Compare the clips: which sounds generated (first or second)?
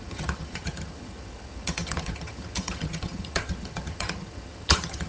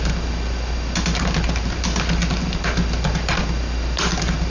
first